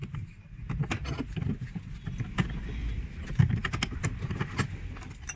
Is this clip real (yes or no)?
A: yes